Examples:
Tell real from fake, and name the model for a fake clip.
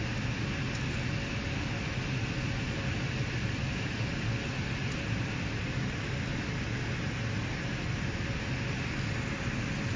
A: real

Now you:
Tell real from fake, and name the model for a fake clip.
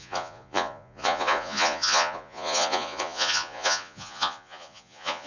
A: fake, vocoder, Vocos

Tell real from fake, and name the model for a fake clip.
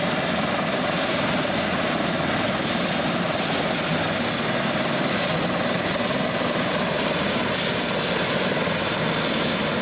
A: real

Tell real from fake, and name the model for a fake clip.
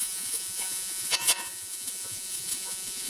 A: fake, vocoder, Vocos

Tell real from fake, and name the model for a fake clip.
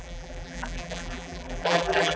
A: fake, vocoder, BigVGAN v2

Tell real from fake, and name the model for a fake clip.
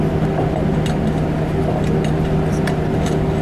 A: real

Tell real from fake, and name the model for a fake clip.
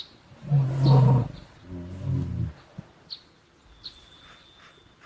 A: real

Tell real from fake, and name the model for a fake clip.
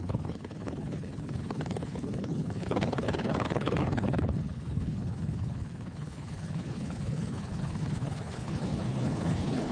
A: fake, codec, HILCodec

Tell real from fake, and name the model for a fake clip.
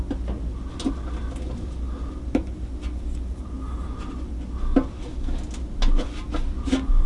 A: real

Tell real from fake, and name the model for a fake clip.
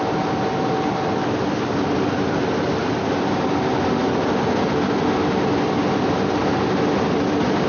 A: real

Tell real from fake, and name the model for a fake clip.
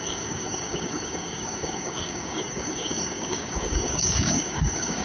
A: fake, codec, DAC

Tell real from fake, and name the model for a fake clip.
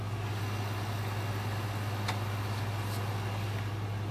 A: real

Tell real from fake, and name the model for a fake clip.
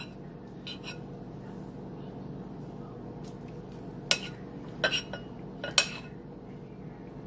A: real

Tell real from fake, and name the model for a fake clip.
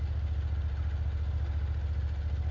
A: real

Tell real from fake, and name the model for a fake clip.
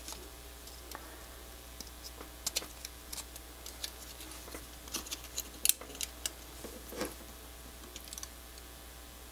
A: real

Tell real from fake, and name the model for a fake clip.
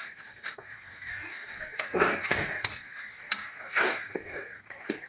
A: fake, codec, DAC